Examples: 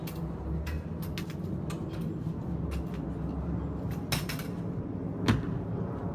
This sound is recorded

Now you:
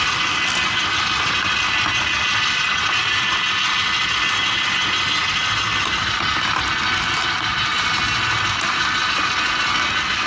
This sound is recorded